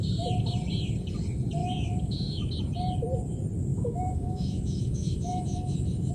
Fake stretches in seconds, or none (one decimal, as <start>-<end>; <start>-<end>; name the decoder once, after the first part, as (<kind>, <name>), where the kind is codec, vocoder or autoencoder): 1.6-2.5 (autoencoder, DAC-VAE); 3.7-6.1